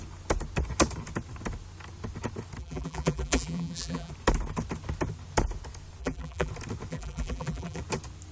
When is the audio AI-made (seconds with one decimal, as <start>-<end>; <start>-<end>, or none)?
2.6-4.1; 6.0-6.5; 6.9-7.8